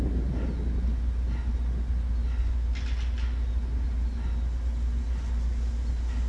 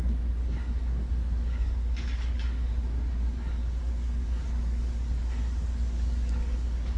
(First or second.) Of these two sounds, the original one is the first